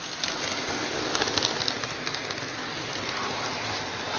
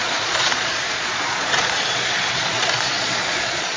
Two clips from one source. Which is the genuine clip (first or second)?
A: first